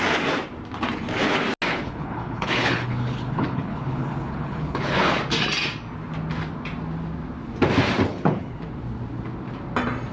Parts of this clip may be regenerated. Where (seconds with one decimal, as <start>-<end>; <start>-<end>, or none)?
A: 1.7-5.2; 8.1-8.6